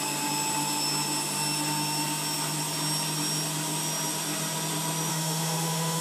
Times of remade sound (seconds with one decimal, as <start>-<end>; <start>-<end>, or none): 5.1-6.0